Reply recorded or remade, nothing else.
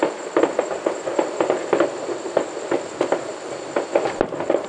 recorded